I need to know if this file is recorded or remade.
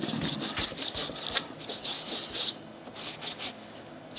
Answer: recorded